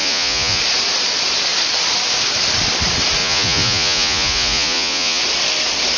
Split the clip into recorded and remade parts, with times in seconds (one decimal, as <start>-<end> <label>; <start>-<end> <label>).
0.0-0.6 remade; 0.6-3.2 recorded; 3.2-5.2 remade; 5.2-6.0 recorded